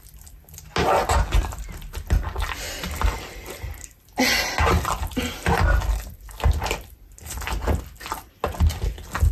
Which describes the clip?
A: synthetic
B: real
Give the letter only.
B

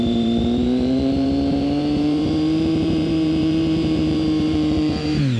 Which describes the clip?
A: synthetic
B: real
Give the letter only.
A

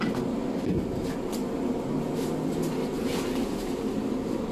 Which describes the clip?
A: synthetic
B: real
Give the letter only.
B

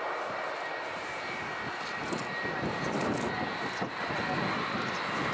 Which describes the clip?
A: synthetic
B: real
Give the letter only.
B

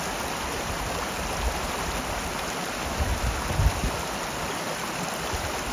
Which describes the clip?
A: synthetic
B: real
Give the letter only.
B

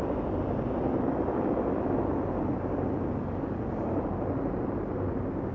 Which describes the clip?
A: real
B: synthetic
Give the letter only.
A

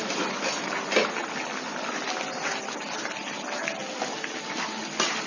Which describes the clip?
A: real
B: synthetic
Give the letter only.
A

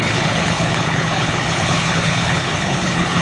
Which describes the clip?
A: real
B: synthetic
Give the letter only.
B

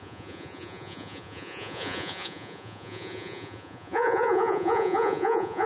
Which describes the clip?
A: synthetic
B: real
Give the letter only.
A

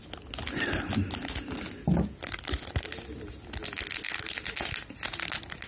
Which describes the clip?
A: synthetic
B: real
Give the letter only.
B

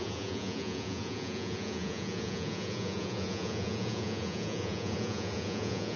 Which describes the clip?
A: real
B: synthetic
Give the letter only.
B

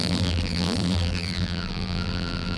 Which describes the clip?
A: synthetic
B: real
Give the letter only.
A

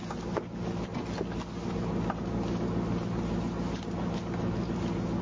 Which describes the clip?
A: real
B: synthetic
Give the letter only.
A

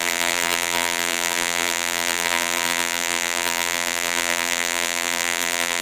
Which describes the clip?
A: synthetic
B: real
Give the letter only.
A